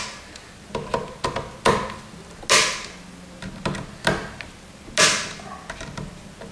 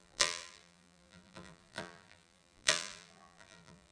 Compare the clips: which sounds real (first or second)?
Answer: first